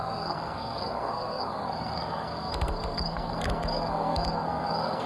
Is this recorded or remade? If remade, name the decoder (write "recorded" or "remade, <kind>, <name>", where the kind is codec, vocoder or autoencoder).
remade, codec, SNAC